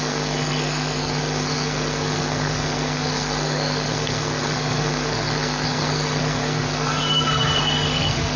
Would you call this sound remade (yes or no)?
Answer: yes